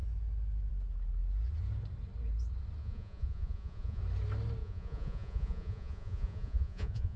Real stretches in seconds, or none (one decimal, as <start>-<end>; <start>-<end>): 0.0-2.8; 4.0-4.6